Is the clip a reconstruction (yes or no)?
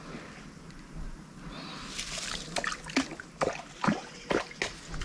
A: no